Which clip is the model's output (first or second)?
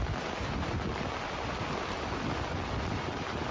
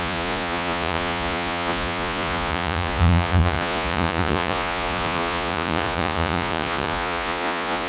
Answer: second